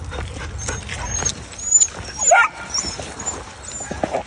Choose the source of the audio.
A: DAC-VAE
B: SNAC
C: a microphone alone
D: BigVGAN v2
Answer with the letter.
C